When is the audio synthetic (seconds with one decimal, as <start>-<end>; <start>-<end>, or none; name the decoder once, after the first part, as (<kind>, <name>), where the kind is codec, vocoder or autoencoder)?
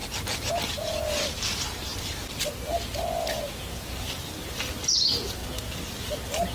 none